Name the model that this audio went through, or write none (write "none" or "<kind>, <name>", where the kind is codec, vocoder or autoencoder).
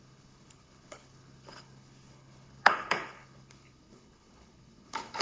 codec, HILCodec